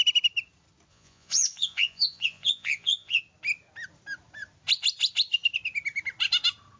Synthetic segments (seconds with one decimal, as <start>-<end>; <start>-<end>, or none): 0.9-3.2